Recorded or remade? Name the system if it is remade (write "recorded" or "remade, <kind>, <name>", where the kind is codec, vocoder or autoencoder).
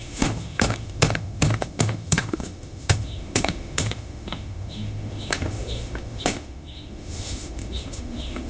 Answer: remade, autoencoder, DAC-VAE